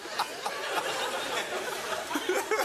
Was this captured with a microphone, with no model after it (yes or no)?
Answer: yes